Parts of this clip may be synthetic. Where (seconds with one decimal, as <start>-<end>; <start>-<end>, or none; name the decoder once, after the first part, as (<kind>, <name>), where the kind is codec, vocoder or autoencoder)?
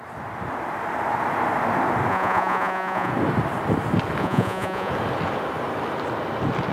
2.1-3.1 (vocoder, Vocos); 4.2-4.9